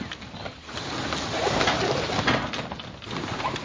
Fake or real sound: real